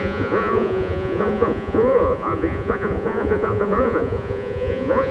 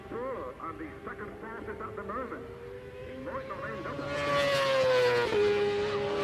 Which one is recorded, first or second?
second